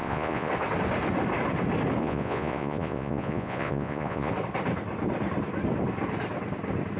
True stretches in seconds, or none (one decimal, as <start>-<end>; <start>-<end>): 0.5-2.0; 4.3-7.0